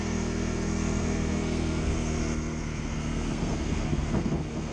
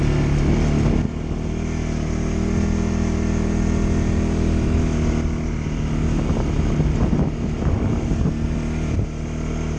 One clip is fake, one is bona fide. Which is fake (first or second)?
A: first